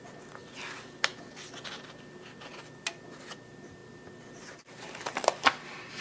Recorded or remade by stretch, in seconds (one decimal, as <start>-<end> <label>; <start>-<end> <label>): 0.0-0.4 remade; 0.4-2.9 recorded; 2.9-6.0 remade